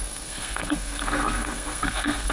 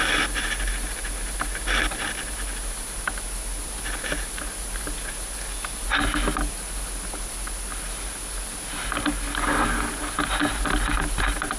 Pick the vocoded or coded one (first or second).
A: first